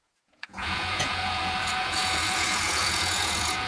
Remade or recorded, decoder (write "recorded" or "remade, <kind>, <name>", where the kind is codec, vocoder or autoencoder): remade, vocoder, Vocos